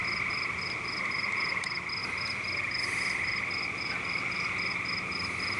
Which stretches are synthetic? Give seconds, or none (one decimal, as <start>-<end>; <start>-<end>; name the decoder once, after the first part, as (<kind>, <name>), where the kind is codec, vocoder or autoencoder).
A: none